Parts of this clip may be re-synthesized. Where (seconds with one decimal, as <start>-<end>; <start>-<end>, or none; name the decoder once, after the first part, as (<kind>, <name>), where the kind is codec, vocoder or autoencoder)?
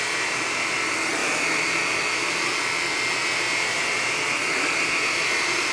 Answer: none